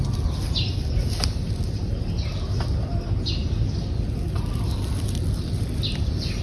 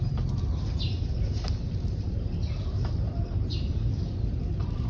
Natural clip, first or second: first